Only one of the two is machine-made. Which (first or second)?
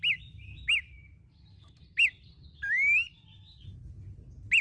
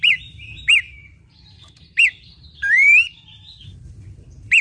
second